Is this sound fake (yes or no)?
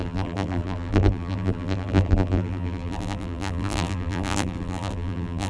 yes